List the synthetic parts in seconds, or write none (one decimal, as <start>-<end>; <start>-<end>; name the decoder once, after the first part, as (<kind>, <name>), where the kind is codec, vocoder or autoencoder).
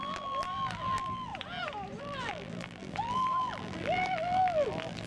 0.0-1.3 (vocoder, BigVGAN v2); 2.0-5.1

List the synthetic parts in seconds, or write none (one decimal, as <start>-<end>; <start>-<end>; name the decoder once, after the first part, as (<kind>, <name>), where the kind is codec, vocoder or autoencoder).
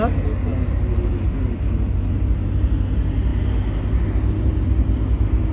none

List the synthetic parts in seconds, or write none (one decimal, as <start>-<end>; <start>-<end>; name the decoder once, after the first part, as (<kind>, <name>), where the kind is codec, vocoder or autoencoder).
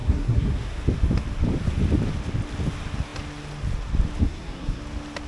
0.0-0.8 (codec, SNAC); 4.2-4.8